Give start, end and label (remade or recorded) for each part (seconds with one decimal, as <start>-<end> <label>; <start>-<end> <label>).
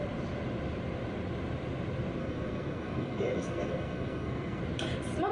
0.0-2.2 recorded; 2.2-4.6 remade; 4.6-5.3 recorded